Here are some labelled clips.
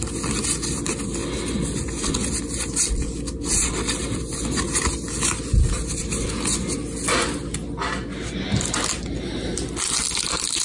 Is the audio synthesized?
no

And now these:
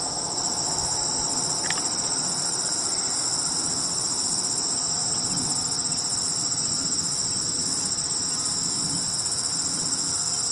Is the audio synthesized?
no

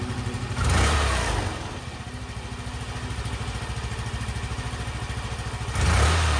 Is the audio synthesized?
no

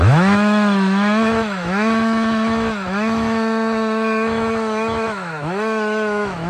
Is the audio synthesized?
yes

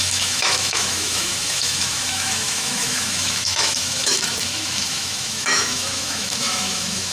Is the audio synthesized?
yes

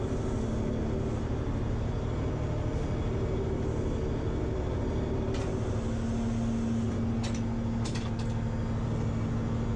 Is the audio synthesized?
no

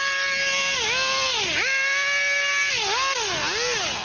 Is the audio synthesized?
no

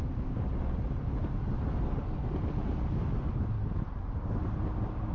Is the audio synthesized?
no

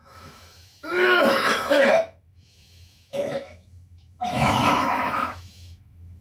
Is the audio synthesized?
yes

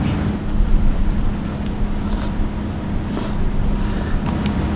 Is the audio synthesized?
no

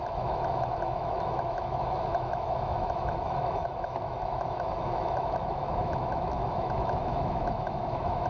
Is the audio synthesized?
yes